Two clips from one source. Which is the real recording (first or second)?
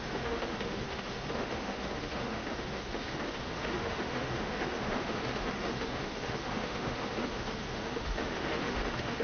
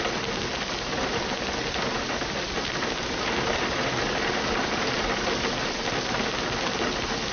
second